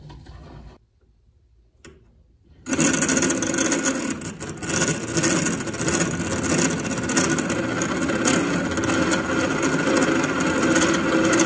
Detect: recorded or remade recorded